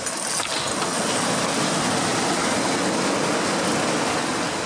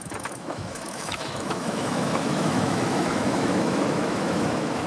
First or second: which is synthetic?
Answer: second